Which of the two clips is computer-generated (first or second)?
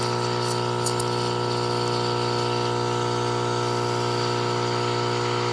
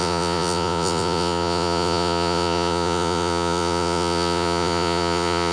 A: second